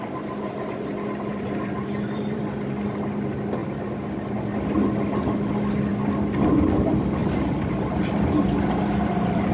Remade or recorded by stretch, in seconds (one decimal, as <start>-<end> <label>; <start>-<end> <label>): 0.0-1.3 recorded; 1.3-2.4 remade; 2.4-9.5 recorded